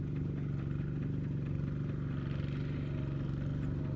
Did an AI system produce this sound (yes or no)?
no